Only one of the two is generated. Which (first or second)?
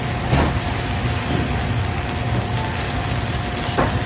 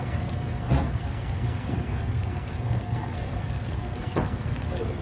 second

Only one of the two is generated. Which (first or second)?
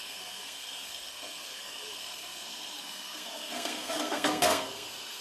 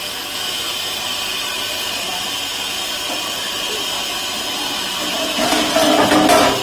first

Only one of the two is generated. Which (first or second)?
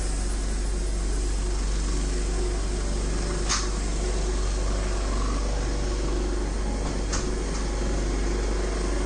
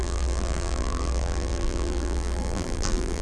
second